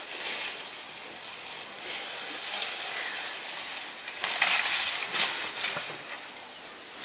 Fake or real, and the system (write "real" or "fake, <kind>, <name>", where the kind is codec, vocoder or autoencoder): real